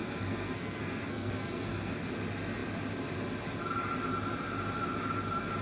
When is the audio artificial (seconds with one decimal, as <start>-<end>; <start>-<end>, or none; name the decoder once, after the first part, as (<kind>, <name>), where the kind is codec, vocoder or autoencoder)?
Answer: 0.0-2.1 (codec, SNAC)